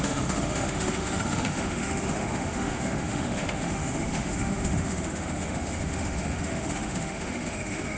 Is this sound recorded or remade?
remade